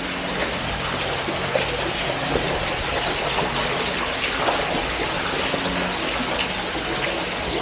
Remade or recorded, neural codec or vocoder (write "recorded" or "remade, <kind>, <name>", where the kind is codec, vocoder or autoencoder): recorded